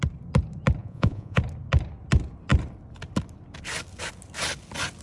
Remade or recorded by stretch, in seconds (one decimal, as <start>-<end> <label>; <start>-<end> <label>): 0.0-0.8 recorded; 0.8-1.4 remade; 1.4-5.0 recorded